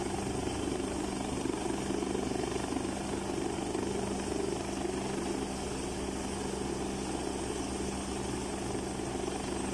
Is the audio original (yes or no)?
yes